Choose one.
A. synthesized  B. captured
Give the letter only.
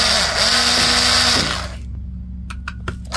B